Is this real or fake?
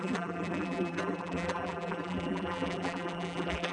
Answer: fake